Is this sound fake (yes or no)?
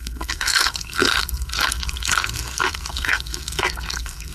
yes